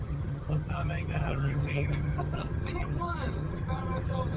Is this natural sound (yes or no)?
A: no